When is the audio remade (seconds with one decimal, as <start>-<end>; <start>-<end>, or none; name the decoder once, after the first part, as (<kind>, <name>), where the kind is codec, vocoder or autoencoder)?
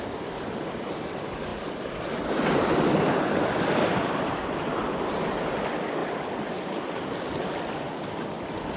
6.0-6.6 (vocoder, BigVGAN v2)